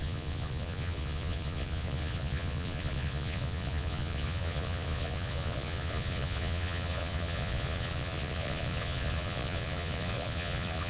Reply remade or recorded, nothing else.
remade